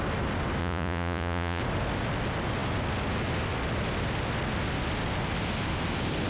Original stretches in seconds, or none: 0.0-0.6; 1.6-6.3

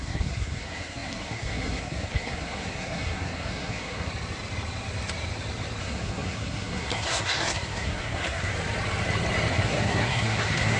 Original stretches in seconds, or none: 4.1-5.8; 8.5-9.5

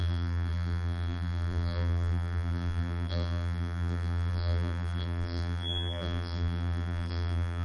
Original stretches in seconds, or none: none

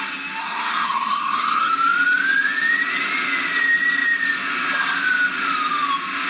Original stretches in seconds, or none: 0.0-0.4; 1.7-6.3

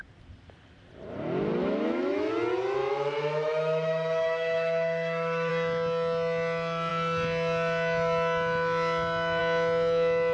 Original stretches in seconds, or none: 0.0-1.6; 2.3-2.8; 5.5-10.3

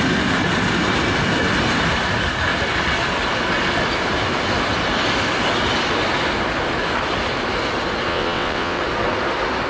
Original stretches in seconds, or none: 0.0-8.1; 8.8-9.7